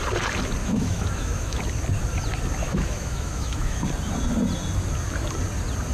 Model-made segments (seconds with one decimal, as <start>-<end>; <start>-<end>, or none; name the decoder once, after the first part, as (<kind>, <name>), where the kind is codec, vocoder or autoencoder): 0.6-1.6 (autoencoder, DAC-VAE); 2.6-3.8